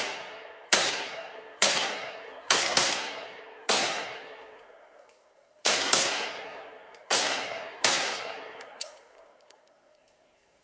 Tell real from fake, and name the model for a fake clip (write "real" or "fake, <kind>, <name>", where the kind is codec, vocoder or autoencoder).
fake, codec, SNAC